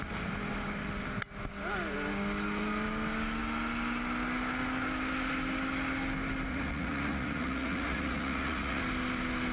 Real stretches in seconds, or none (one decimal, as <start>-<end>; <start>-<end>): 0.0-6.5; 8.8-9.5